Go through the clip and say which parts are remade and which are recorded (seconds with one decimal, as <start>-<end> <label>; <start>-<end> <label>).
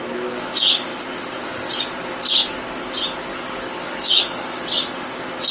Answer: 0.0-3.3 recorded; 3.3-4.6 remade; 4.6-5.5 recorded